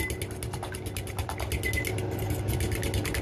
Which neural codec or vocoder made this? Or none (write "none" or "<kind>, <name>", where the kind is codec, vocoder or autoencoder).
none